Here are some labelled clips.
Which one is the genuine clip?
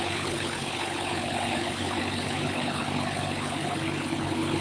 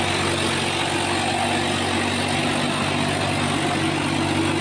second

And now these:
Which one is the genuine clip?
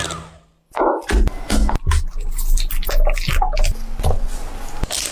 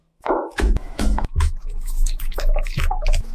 first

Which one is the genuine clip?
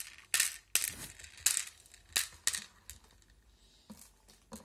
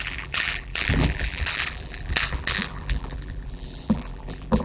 first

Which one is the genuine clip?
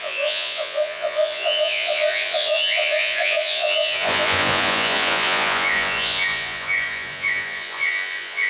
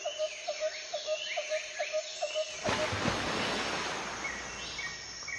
second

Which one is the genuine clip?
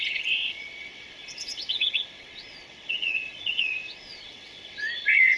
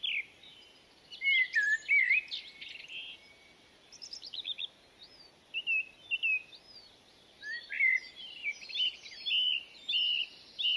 second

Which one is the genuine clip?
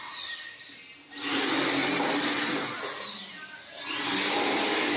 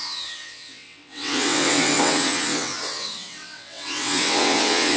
first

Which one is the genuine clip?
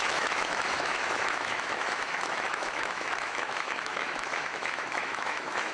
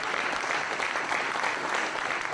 second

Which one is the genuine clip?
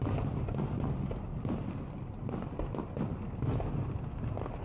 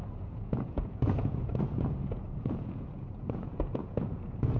first